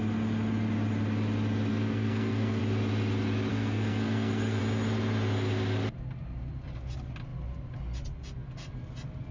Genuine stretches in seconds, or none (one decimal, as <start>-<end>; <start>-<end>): 0.0-1.7; 2.6-3.5; 4.6-9.3